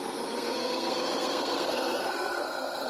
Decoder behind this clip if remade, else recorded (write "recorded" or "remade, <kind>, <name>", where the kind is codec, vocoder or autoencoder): remade, codec, SNAC